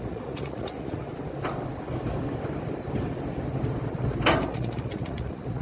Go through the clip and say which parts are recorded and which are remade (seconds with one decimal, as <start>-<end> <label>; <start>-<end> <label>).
0.0-1.1 remade; 1.1-4.5 recorded; 4.5-5.6 remade